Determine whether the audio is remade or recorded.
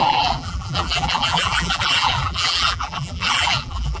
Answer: remade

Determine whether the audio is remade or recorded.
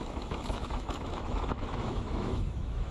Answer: remade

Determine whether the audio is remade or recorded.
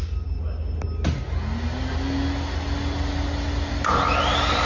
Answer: recorded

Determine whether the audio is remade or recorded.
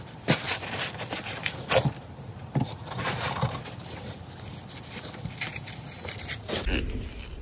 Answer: recorded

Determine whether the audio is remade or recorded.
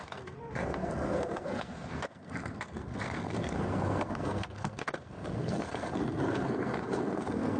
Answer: remade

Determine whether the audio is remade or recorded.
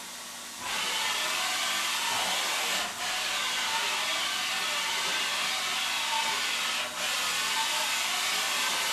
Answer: recorded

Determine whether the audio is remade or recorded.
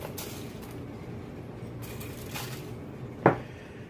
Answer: recorded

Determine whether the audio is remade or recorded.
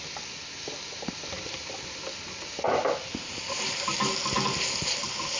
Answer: recorded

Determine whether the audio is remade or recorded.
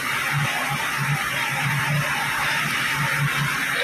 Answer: recorded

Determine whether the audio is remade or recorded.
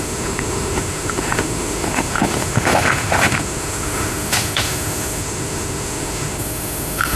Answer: remade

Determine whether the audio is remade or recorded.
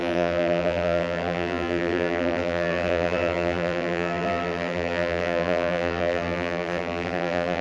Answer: remade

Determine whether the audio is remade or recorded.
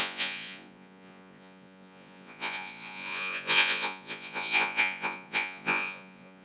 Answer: remade